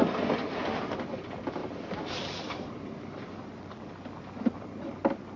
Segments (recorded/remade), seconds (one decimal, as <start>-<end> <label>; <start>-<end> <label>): 0.0-5.4 recorded